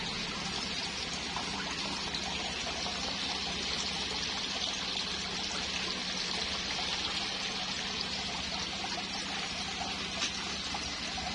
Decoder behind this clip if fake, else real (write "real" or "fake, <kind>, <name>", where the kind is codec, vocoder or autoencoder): real